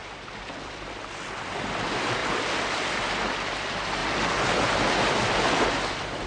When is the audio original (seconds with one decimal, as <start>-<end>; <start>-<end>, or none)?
1.7-2.2; 2.9-4.0; 4.6-6.3